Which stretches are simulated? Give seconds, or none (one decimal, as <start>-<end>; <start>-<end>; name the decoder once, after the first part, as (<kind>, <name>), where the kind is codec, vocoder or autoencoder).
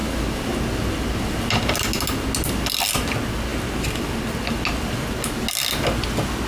none